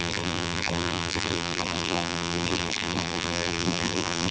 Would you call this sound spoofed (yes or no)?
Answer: yes